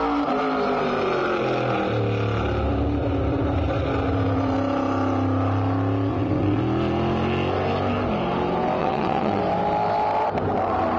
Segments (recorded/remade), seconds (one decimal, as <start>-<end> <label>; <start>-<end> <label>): 0.0-6.1 recorded; 6.1-6.6 remade; 6.6-8.8 recorded; 8.8-9.4 remade; 9.4-11.0 recorded